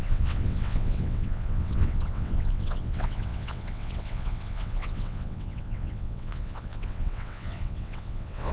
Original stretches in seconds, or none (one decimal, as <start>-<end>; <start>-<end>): none